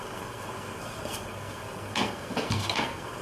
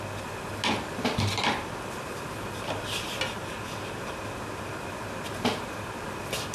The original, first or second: second